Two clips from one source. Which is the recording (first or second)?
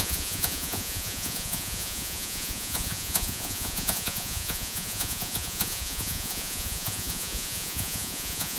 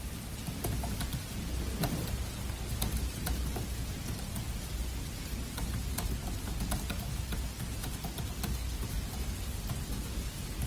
second